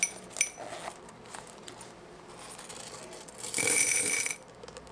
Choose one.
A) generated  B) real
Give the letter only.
B